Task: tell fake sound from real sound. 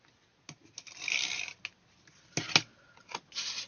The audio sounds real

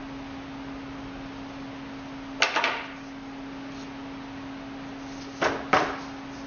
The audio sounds real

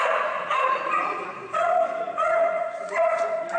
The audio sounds fake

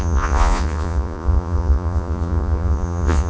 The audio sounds fake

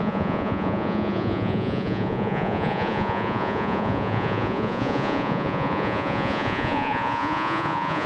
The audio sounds fake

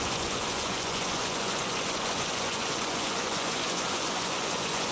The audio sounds fake